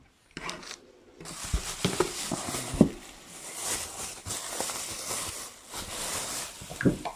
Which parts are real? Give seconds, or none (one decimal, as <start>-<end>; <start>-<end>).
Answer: 4.2-6.3